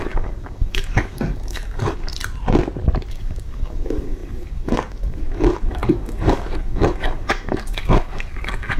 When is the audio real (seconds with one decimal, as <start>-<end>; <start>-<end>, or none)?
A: 2.1-3.1